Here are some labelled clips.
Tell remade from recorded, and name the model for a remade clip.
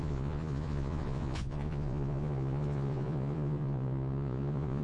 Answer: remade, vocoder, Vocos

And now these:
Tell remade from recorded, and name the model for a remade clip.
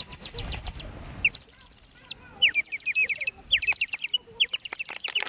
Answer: recorded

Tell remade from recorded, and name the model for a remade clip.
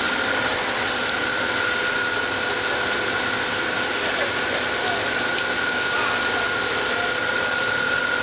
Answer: recorded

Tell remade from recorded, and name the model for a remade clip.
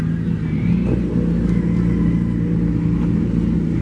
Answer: recorded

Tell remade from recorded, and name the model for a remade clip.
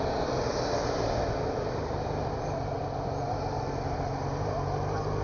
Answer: recorded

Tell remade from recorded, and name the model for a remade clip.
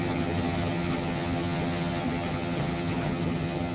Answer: remade, vocoder, HiFi-GAN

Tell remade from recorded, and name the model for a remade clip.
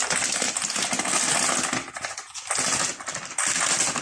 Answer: recorded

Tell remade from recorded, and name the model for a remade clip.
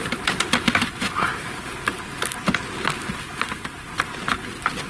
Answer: recorded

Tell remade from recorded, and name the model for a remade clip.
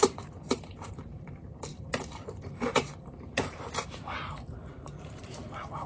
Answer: remade, vocoder, BigVGAN v2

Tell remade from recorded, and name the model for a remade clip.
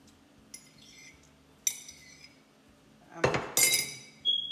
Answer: recorded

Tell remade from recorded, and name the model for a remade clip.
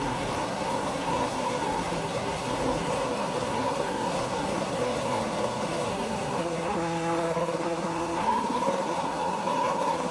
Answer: remade, codec, SNAC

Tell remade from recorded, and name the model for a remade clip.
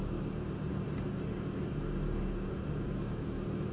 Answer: recorded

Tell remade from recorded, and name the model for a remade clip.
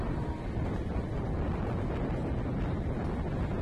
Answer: recorded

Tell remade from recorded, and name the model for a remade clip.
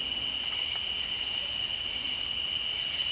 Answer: recorded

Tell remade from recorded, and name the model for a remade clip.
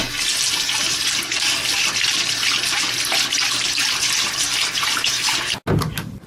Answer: recorded